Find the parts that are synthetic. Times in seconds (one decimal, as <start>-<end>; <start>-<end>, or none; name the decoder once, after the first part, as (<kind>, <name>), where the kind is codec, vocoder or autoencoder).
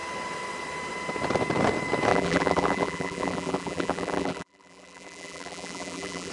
2.1-6.3 (vocoder, BigVGAN v2)